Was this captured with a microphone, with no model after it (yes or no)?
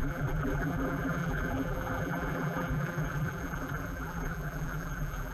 no